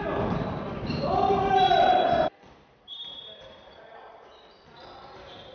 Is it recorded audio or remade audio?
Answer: remade